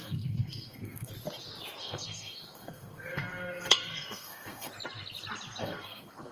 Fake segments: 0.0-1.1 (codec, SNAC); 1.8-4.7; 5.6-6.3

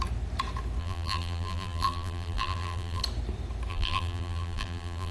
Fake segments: 0.8-3.0 (vocoder, BigVGAN v2); 3.7-5.1

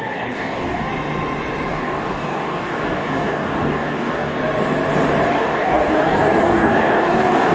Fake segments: 0.0-0.9 (codec, DAC); 1.7-4.4; 5.3-7.5

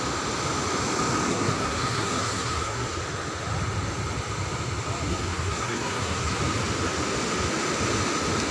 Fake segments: 1.3-3.0 (codec, SNAC); 5.1-6.4

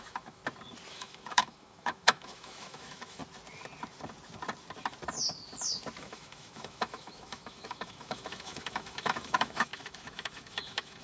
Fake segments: 0.0-0.4 (autoencoder, DAC-VAE); 0.9-3.2; 6.0-11.0

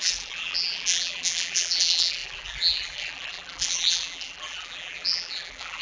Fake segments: 0.0-5.8 (vocoder, BigVGAN v2)

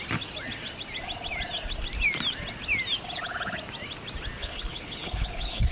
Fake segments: 4.4-5.7 (codec, HILCodec)

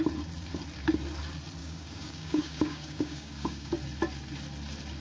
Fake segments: 1.6-3.7 (codec, DAC)